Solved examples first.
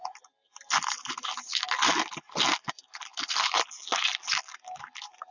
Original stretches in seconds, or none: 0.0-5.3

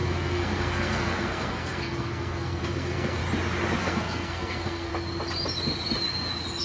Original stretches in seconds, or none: 3.2-3.8; 4.9-6.6

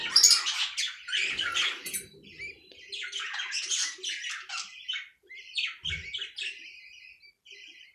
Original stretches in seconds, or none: 0.0-7.9

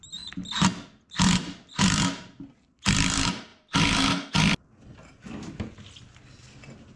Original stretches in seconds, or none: 0.0-7.0

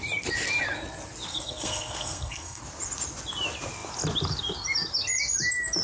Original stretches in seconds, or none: 0.0-1.3; 2.6-5.8

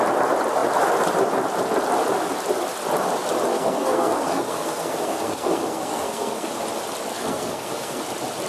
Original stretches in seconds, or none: 0.0-3.5; 6.5-7.1; 8.0-8.5

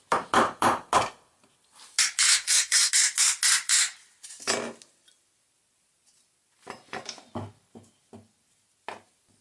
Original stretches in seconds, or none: 0.0-2.3; 2.9-9.4

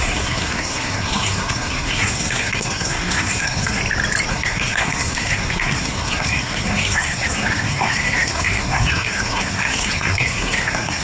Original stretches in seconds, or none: 3.8-4.3